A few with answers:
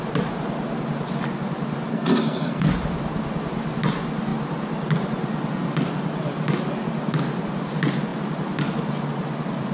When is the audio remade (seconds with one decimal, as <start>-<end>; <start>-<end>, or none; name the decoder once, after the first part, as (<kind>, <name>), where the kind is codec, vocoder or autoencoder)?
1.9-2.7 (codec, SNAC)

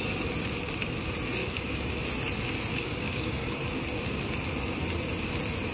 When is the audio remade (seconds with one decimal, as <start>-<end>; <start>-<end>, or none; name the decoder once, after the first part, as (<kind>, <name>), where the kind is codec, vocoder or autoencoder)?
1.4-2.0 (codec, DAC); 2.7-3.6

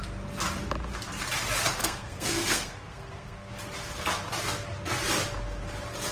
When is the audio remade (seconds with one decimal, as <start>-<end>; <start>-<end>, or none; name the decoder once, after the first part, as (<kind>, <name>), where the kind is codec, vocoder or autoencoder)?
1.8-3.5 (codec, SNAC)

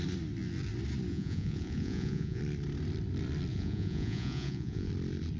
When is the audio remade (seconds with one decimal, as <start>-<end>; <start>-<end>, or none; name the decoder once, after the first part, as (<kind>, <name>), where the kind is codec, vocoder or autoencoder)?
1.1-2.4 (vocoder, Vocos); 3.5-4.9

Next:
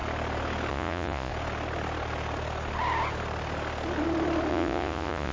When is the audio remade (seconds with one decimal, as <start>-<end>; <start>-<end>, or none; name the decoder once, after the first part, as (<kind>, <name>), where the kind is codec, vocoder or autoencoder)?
0.7-1.3 (vocoder, Vocos); 4.5-5.3

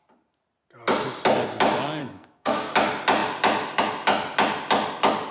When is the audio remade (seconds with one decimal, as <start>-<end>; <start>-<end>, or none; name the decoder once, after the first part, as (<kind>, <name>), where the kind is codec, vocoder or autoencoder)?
2.0-2.7 (codec, SNAC)

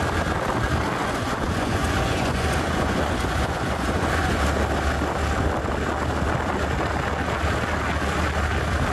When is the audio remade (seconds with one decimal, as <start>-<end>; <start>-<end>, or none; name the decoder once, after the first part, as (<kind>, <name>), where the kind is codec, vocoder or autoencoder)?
1.0-4.4 (vocoder, Vocos)